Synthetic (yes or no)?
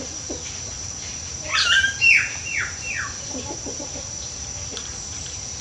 yes